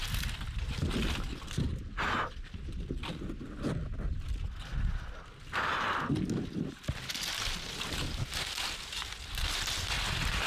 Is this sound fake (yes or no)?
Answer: no